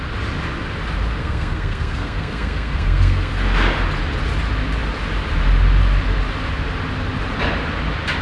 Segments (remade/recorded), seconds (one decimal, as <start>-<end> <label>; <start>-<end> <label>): 0.0-1.2 recorded; 1.2-3.3 remade; 3.3-8.2 recorded